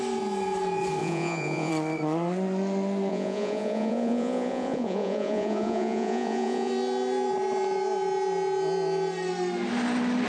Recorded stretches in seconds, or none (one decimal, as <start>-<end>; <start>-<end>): 0.0-1.0; 1.7-3.1; 6.7-10.3